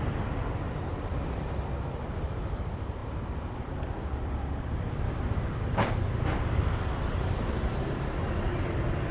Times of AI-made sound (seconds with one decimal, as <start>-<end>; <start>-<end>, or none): none